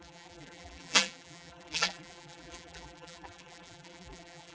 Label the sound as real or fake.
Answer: fake